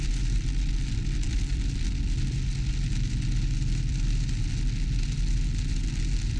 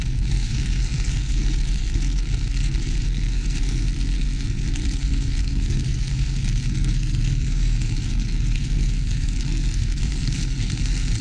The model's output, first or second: second